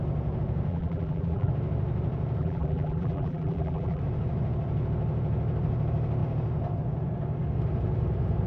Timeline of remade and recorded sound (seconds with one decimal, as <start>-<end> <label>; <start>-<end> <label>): 0.0-0.7 recorded; 0.7-1.5 remade; 1.5-2.4 recorded; 2.4-4.0 remade; 4.0-8.5 recorded